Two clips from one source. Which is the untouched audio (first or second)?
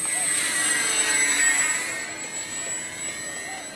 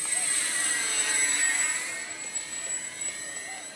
first